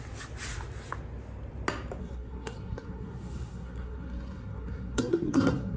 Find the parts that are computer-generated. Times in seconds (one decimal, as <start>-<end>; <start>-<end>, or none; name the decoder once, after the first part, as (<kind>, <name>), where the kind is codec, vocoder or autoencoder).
2.0-5.8 (codec, SNAC)